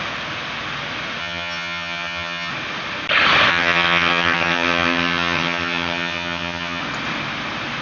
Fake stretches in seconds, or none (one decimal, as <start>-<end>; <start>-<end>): 1.2-2.5; 3.5-6.8